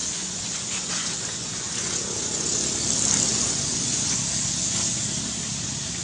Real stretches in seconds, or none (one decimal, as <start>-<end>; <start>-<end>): 2.6-3.3; 4.2-6.0